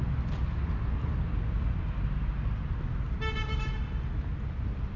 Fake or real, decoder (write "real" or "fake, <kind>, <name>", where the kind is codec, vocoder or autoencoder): real